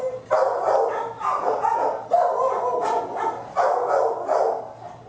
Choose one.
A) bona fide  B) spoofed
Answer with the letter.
A